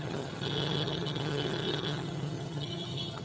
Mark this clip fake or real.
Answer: fake